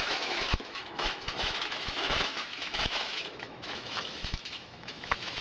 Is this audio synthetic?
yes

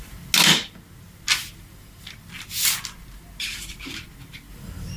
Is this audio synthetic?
no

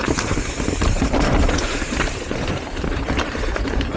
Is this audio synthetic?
yes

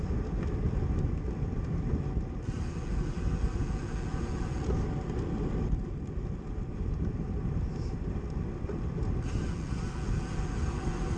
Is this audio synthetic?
no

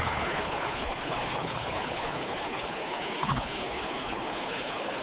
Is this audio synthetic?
yes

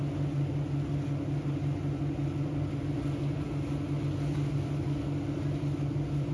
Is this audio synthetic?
no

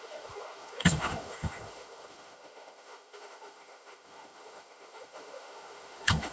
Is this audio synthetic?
yes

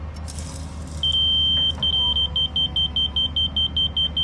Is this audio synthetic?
no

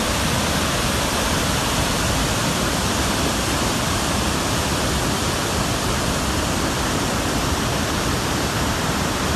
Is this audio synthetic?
yes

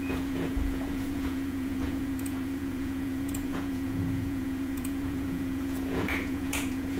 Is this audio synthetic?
yes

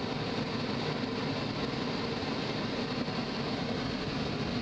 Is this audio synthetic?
no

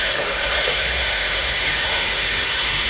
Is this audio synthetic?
yes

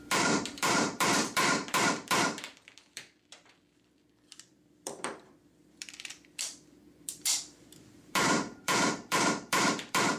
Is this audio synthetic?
yes